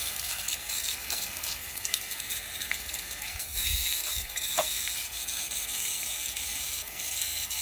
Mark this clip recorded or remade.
remade